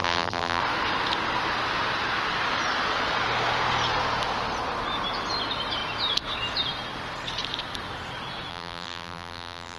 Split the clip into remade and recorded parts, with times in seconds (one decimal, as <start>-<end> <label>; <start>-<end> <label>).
0.0-0.6 remade; 0.6-8.5 recorded; 8.5-9.8 remade